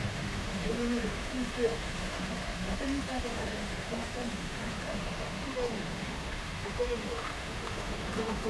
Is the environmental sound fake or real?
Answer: fake